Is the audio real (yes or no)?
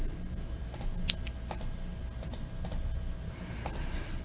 yes